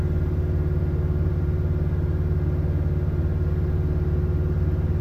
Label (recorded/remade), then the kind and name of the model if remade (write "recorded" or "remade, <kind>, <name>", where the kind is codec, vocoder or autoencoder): recorded